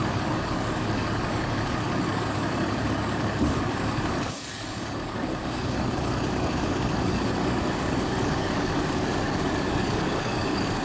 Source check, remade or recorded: remade